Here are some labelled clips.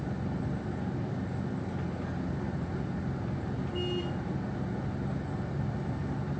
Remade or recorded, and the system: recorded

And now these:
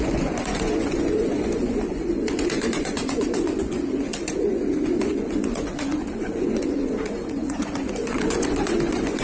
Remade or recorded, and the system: remade, vocoder, Vocos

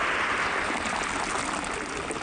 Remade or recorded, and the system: recorded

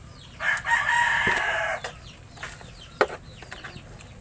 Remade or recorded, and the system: recorded